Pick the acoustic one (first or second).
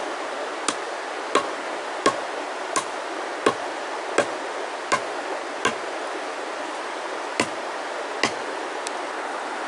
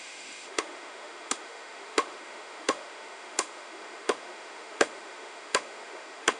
first